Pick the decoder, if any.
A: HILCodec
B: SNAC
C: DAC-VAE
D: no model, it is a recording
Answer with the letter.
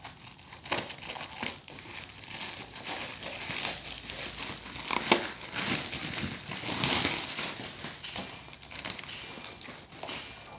D